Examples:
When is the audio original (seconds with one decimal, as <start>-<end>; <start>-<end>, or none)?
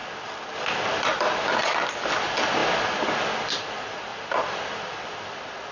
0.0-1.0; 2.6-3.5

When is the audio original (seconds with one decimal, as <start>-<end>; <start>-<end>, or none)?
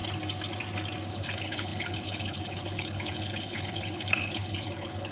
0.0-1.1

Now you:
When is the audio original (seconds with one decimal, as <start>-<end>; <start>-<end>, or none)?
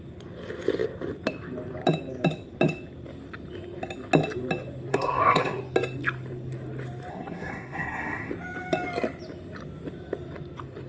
0.0-4.9; 5.6-7.1; 8.3-10.9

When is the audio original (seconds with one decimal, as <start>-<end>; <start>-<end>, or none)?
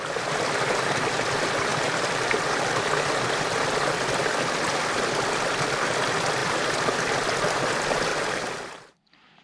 0.0-9.4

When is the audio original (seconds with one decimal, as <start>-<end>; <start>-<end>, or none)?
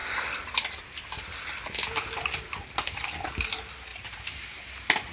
0.0-3.9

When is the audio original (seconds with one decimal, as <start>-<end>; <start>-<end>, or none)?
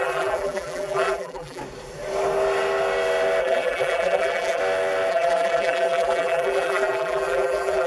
1.6-3.4; 4.6-5.1